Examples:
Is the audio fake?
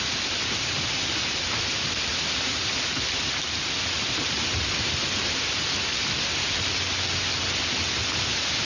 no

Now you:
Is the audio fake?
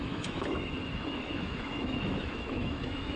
yes